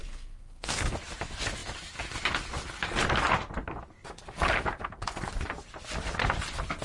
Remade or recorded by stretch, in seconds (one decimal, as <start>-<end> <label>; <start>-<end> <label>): 0.0-0.9 remade; 0.9-6.8 recorded